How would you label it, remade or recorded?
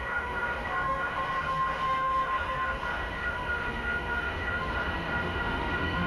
remade